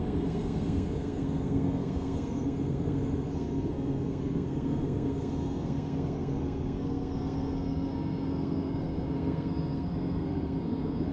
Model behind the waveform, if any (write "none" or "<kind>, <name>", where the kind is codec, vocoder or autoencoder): codec, SNAC